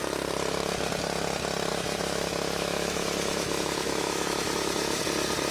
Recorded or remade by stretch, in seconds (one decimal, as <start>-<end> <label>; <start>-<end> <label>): 0.0-1.7 recorded; 1.7-5.0 remade; 5.0-5.5 recorded